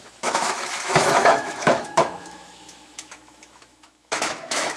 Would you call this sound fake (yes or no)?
yes